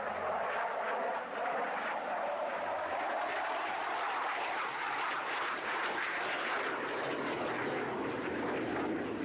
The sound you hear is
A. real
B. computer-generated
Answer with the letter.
A